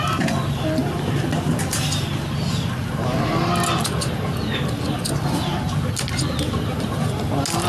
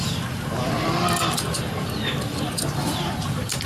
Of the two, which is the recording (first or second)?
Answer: first